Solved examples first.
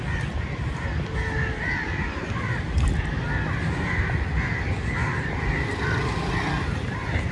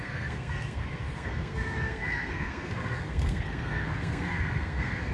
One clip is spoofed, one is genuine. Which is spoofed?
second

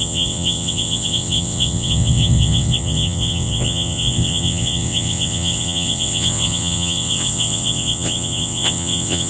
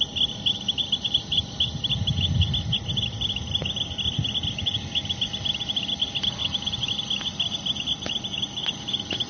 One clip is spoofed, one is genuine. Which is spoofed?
first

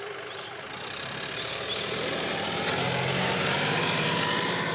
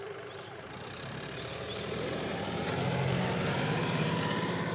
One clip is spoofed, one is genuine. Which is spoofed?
second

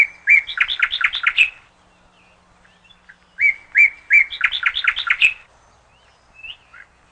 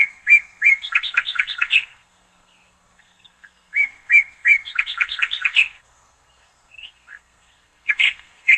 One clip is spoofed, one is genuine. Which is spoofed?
second